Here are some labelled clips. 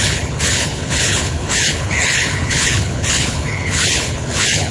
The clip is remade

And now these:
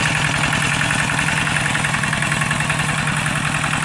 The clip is recorded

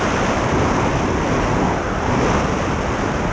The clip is recorded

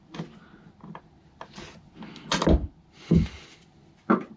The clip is recorded